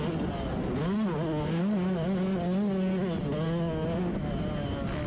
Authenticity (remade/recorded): recorded